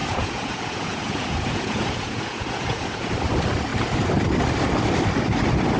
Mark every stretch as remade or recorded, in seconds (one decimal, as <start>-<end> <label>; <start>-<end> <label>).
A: 0.0-3.1 remade; 3.1-5.8 recorded